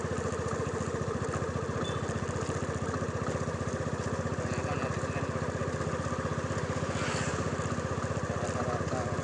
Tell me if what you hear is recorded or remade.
recorded